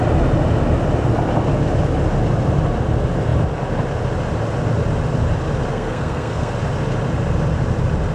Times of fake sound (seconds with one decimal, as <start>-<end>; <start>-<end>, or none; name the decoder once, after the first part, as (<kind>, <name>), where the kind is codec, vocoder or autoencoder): 5.7-6.5 (codec, SNAC)